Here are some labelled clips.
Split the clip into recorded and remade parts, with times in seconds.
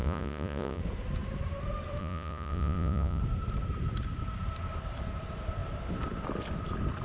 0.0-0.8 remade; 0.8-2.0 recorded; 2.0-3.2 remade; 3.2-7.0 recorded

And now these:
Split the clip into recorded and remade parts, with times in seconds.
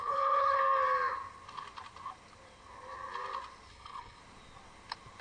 0.0-0.6 remade; 0.6-3.7 recorded; 3.7-4.2 remade; 4.2-5.2 recorded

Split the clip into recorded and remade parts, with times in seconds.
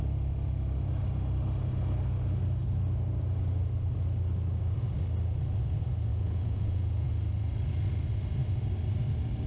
0.0-6.1 recorded; 6.1-7.1 remade; 7.1-9.5 recorded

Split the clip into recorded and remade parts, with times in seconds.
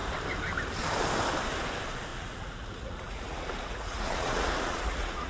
0.0-2.1 recorded; 2.1-5.3 remade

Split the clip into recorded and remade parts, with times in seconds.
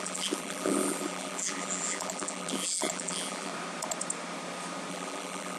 0.0-3.5 remade; 3.5-4.9 recorded; 4.9-5.6 remade